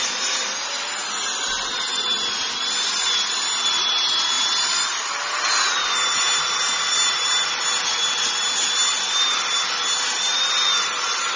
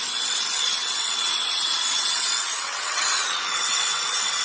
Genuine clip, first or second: first